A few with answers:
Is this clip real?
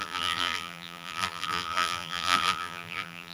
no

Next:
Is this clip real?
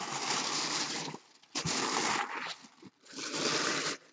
yes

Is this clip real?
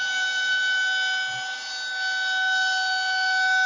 yes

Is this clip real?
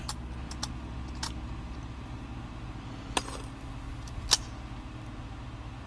yes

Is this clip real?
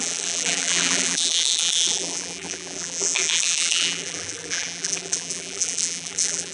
no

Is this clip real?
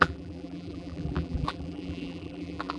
no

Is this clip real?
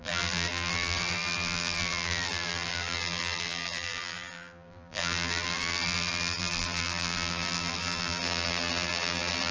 no